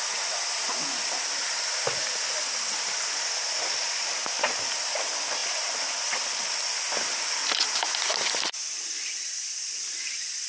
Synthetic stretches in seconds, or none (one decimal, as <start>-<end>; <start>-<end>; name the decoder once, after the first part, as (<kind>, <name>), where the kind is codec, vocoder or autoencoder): none